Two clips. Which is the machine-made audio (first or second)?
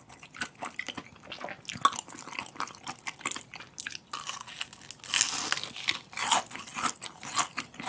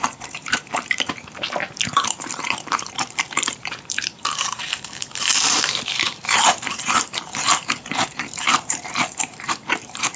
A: second